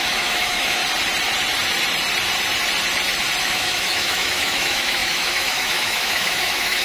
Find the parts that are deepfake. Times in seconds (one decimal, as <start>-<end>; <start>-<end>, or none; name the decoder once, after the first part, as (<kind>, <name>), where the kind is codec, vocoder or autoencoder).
0.0-0.8 (autoencoder, DAC-VAE); 3.4-6.8